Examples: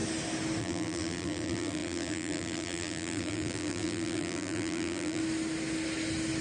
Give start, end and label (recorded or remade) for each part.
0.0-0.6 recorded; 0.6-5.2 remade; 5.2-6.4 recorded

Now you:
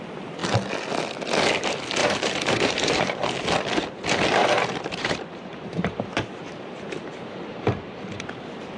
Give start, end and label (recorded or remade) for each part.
0.0-2.0 recorded; 2.0-3.0 remade; 3.0-4.4 recorded; 4.4-6.7 remade; 6.7-7.5 recorded; 7.5-8.3 remade; 8.3-8.8 recorded

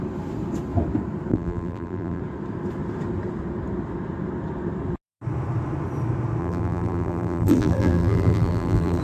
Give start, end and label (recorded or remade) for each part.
0.0-1.3 recorded; 1.3-2.2 remade; 2.2-6.4 recorded; 6.4-9.0 remade

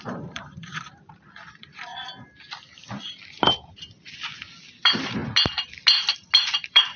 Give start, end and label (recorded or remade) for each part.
0.0-1.9 remade; 1.9-4.8 recorded; 4.8-5.2 remade; 5.2-6.4 recorded; 6.4-7.0 remade

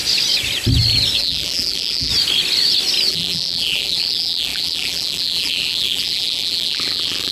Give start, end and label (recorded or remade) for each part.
0.0-1.2 recorded; 1.2-2.1 remade; 2.1-3.1 recorded; 3.1-7.3 remade

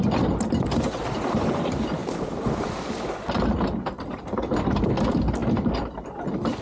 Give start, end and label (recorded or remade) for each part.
0.0-2.0 recorded; 2.0-2.8 remade; 2.8-6.6 recorded

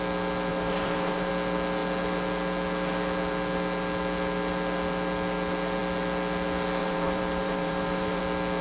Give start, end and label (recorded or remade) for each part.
0.0-0.5 recorded; 0.5-1.3 remade; 1.3-6.8 recorded; 6.8-8.2 remade; 8.2-8.6 recorded

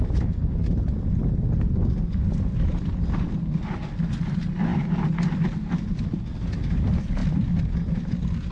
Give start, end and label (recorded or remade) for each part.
0.0-8.5 recorded